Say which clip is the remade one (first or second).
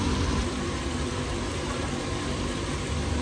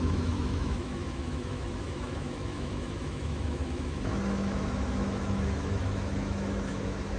second